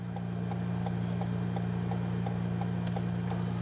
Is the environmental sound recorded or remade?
recorded